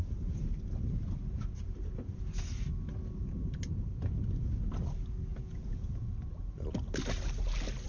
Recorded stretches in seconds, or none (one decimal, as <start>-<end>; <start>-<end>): 0.0-5.3; 6.1-7.9